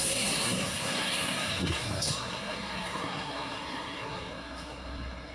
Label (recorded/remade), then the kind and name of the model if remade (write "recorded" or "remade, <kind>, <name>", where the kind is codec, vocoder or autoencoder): remade, codec, SNAC